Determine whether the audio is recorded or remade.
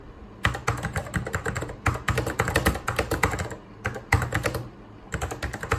recorded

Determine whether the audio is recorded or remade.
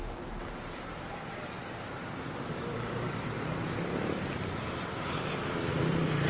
remade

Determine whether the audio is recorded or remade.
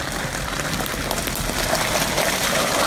recorded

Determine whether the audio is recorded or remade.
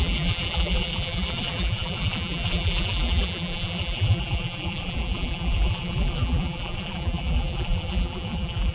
remade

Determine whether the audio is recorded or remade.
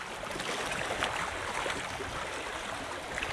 recorded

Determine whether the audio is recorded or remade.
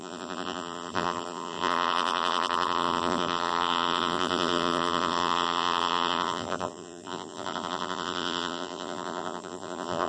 remade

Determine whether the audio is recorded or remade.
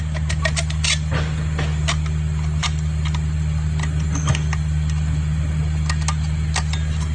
recorded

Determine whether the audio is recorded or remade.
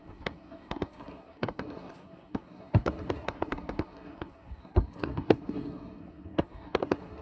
remade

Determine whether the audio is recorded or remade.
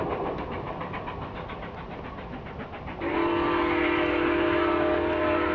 recorded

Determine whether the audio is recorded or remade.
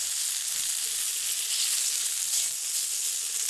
recorded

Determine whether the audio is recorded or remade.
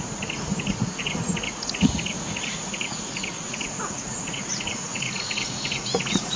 remade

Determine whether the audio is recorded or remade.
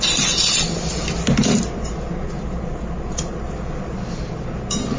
recorded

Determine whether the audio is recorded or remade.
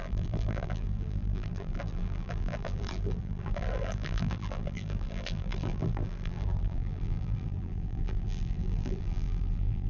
remade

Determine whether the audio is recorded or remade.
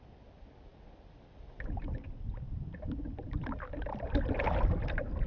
recorded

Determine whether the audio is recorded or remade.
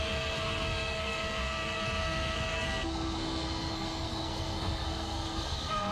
remade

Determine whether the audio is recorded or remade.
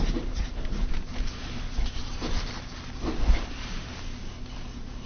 recorded